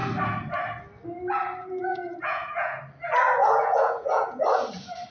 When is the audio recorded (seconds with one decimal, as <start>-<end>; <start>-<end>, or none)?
0.0-1.6; 2.8-3.4; 4.4-5.1